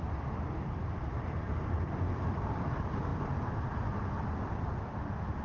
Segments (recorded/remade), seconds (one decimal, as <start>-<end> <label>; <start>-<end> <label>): 0.0-3.1 remade; 3.1-4.2 recorded; 4.2-5.4 remade